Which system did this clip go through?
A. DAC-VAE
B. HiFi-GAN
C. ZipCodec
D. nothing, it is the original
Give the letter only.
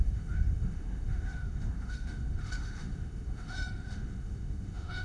A